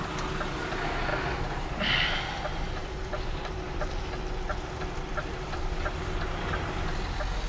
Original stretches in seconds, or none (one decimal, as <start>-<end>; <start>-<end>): 0.0-2.8; 6.6-7.5